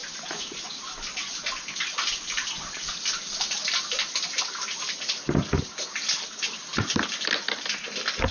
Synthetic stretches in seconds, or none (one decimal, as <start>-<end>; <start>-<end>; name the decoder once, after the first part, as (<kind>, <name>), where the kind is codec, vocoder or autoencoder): none